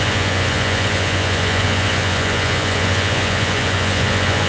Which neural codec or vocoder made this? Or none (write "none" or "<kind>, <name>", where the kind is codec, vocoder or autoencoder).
vocoder, Vocos